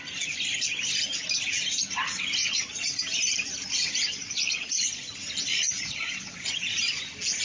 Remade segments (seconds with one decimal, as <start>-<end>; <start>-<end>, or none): 2.4-3.0; 4.1-5.1; 5.5-6.7

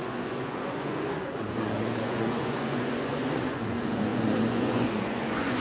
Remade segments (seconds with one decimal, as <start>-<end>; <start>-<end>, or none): 0.0-5.6